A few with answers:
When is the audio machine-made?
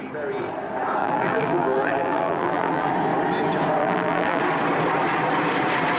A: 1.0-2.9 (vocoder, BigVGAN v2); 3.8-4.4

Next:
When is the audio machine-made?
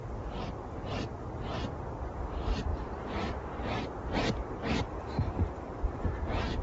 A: 2.7-6.6 (vocoder, BigVGAN v2)